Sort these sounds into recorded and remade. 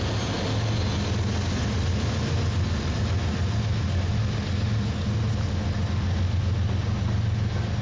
recorded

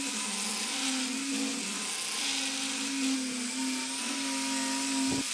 recorded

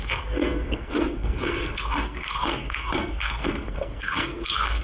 remade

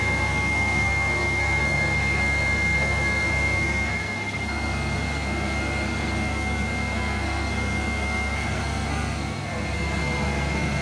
remade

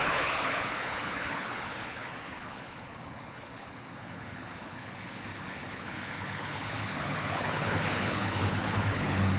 remade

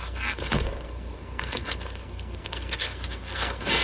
remade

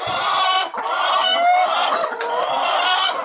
recorded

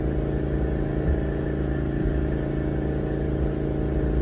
recorded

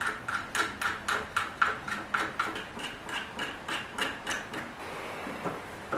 recorded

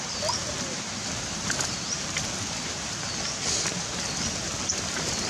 remade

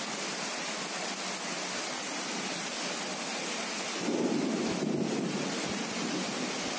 recorded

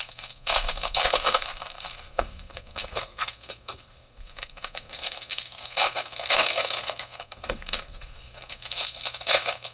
remade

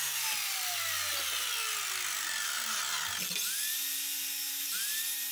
recorded